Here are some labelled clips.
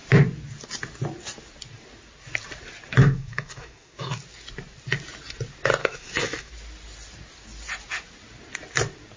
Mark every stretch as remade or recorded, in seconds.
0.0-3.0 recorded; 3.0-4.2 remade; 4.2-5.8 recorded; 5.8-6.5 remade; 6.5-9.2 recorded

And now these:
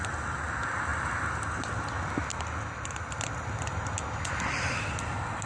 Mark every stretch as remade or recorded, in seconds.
0.0-5.5 recorded

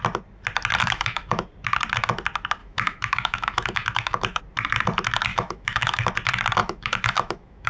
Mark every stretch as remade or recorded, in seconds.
0.0-0.8 recorded; 0.8-1.5 remade; 1.5-2.6 recorded; 2.6-4.4 remade; 4.4-5.3 recorded; 5.3-6.1 remade; 6.1-6.6 recorded; 6.6-7.7 remade

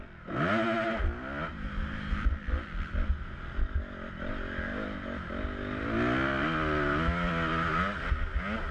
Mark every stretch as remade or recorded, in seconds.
0.0-8.7 recorded